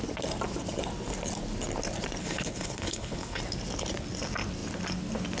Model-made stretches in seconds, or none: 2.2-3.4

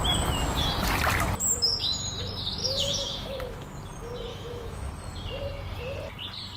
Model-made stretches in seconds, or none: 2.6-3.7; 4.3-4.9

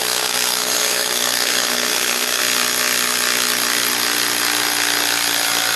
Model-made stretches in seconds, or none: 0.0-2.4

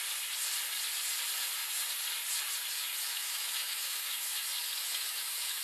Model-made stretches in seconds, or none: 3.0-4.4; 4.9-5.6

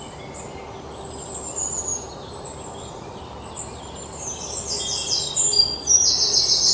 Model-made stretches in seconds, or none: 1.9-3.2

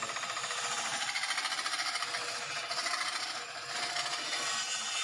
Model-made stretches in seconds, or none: none

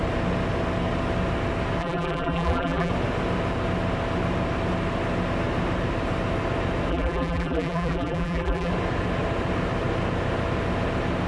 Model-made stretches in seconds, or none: 1.8-2.9; 6.9-8.7